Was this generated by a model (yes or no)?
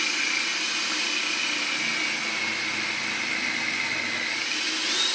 no